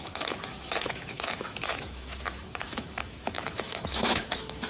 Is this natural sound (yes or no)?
no